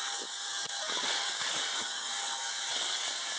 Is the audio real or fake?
fake